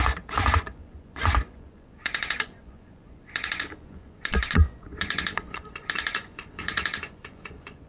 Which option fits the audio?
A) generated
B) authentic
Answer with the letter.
A